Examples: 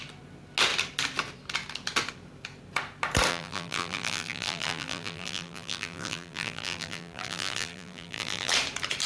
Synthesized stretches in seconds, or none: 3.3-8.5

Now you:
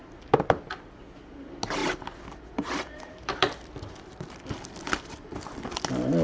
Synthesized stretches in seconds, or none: 0.0-0.7; 1.8-5.4